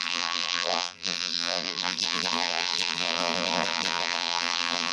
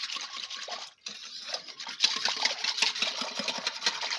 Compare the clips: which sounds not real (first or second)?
first